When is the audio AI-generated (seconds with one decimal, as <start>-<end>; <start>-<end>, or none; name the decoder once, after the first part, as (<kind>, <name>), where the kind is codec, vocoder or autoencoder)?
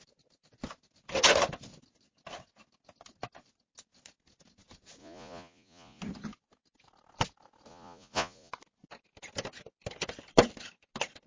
5.0-6.0 (vocoder, Vocos); 7.7-8.5